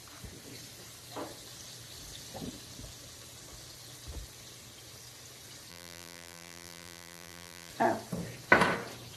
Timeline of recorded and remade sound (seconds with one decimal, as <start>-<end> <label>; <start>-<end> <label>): 0.0-5.7 recorded; 5.7-7.7 remade; 7.7-9.2 recorded